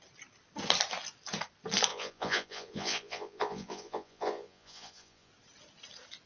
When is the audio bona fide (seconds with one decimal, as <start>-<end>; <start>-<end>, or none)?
0.0-1.9; 5.3-6.3